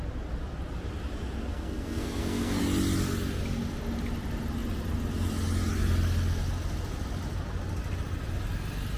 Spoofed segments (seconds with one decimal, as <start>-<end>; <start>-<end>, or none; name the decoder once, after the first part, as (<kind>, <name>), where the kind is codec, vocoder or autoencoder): 1.5-2.6 (codec, SNAC)